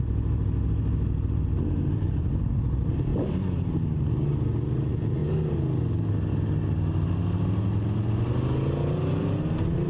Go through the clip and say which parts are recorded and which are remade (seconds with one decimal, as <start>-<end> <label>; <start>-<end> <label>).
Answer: 0.0-9.9 recorded